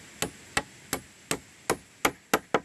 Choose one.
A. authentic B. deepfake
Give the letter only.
A